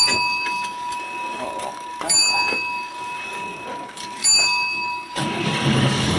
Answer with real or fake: fake